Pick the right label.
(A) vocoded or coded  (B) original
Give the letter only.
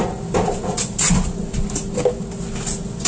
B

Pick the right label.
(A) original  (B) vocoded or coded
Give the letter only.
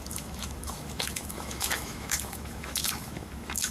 B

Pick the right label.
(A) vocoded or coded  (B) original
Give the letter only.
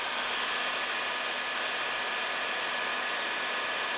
B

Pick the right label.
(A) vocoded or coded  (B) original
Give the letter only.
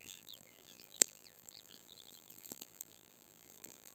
A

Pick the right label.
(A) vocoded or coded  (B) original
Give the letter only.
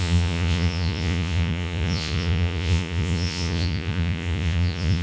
A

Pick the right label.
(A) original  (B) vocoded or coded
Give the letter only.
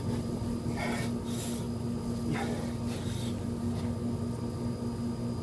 A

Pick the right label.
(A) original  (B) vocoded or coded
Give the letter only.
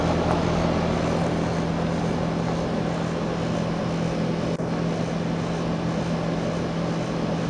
A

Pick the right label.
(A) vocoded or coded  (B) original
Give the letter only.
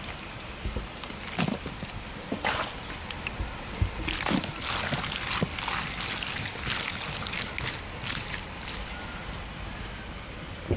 B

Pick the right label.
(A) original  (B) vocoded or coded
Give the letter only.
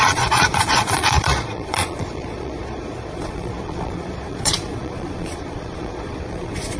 B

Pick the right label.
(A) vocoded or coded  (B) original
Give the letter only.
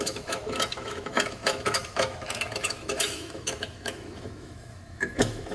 A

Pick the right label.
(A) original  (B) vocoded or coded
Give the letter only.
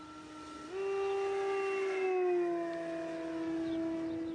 A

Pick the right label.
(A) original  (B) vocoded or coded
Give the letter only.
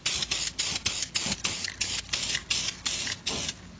A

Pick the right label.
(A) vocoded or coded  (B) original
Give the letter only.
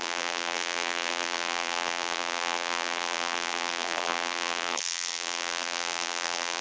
A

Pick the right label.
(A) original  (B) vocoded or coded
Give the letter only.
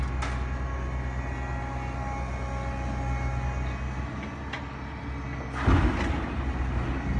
A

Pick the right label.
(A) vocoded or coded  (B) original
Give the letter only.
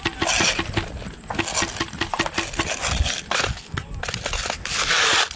B